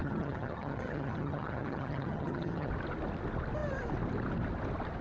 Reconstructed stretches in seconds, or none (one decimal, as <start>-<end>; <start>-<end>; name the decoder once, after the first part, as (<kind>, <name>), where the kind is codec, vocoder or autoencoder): 0.0-2.7 (vocoder, HiFi-GAN)